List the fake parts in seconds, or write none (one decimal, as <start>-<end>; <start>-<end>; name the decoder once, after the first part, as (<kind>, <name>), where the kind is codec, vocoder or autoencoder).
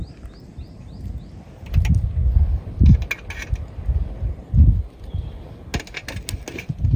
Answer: none